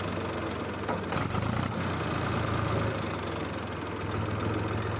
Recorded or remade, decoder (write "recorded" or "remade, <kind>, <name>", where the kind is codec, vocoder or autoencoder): recorded